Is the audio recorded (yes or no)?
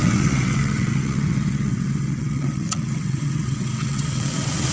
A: no